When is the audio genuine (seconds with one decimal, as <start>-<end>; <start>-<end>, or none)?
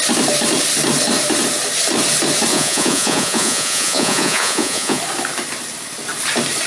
0.0-2.5; 5.0-6.7